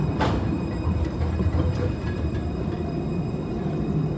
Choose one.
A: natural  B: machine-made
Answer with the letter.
B